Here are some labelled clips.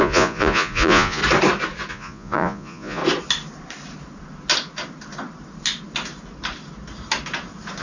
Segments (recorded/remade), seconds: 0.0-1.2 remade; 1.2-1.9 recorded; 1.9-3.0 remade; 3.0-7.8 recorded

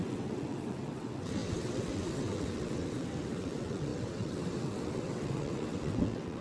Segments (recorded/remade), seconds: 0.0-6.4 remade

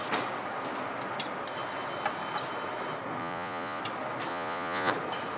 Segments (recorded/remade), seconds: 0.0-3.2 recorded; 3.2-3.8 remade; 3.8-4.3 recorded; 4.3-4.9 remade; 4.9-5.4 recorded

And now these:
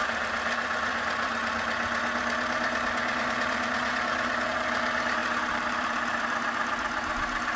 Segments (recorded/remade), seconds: 0.0-5.2 recorded; 5.2-6.2 remade; 6.2-7.6 recorded

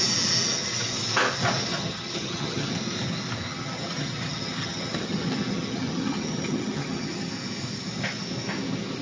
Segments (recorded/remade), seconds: 0.0-1.7 recorded; 1.7-2.7 remade; 2.7-3.5 recorded; 3.5-7.3 remade; 7.3-9.0 recorded

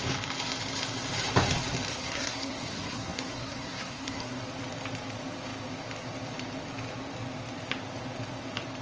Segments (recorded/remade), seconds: 0.0-1.9 recorded; 1.9-4.4 remade; 4.4-8.8 recorded

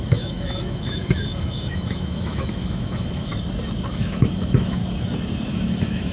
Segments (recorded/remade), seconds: 0.0-3.3 remade; 3.3-3.9 recorded; 3.9-4.8 remade; 4.8-5.5 recorded; 5.5-6.1 remade

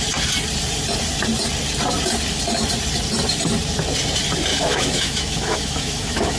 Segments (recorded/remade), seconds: 0.0-4.5 recorded; 4.5-6.4 remade